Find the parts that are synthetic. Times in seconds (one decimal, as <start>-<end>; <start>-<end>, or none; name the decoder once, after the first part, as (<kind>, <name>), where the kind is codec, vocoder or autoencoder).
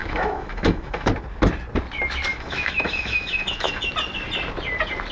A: 0.0-1.1 (autoencoder, DAC-VAE); 2.3-3.9